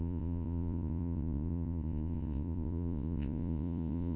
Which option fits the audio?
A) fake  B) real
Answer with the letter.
A